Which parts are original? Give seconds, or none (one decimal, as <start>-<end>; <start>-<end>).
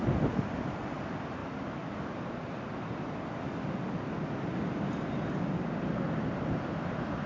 0.0-7.3